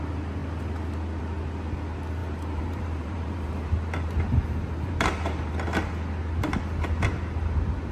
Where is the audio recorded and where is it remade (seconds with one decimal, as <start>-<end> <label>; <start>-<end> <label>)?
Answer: 0.0-2.2 recorded; 2.2-5.5 remade; 5.5-7.9 recorded